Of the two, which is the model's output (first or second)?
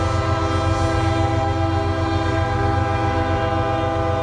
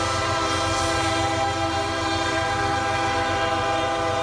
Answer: second